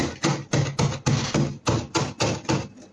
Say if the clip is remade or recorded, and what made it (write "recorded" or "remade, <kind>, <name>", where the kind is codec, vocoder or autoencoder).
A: recorded